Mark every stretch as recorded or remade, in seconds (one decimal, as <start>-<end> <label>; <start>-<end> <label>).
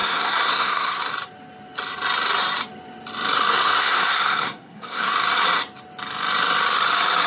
0.0-1.0 remade; 1.0-3.5 recorded; 3.5-5.1 remade; 5.1-7.3 recorded